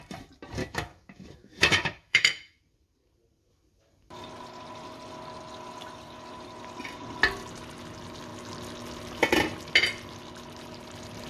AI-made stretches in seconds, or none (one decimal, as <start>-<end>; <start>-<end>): 0.6-2.6